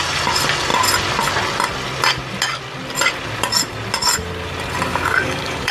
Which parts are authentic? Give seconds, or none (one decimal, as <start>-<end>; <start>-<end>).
0.0-4.9